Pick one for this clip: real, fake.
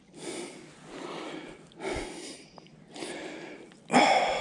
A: real